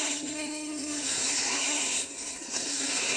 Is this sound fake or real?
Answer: fake